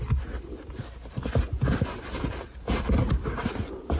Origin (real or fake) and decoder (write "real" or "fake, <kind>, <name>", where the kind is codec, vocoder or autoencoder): real